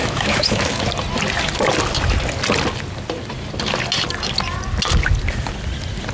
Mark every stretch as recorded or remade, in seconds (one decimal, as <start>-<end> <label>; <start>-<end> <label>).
0.0-0.8 remade; 0.8-6.1 recorded